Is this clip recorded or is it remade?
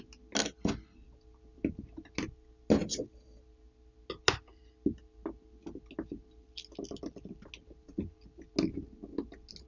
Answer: recorded